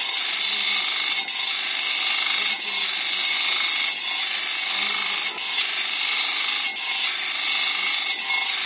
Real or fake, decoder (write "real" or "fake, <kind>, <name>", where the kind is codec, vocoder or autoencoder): real